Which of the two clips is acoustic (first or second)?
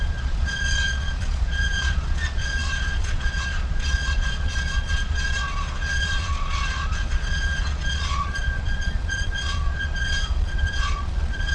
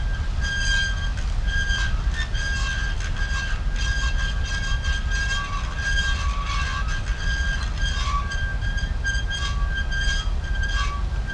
second